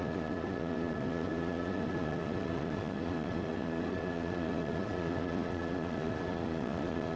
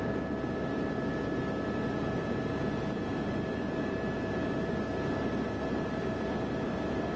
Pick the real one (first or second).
second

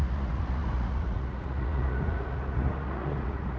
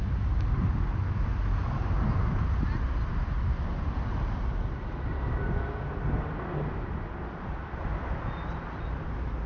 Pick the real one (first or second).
second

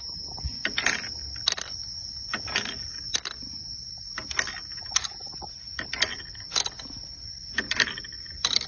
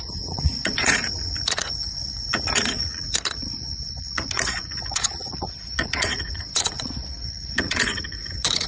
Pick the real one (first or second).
first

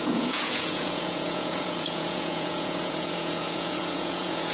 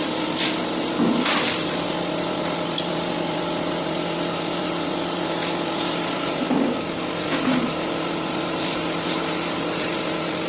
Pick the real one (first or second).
second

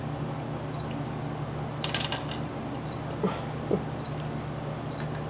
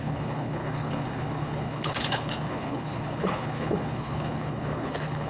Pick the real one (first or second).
first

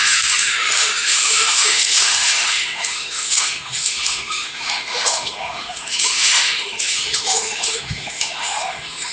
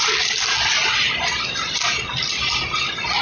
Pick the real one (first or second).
second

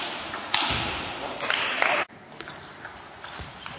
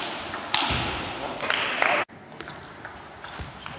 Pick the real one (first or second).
second